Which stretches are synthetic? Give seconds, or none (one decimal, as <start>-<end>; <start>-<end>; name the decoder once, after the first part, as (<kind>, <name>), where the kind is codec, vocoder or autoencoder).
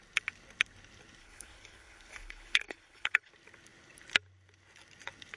1.2-3.3 (codec, HILCodec)